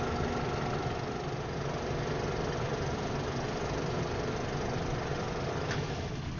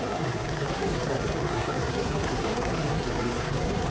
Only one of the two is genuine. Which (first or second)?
first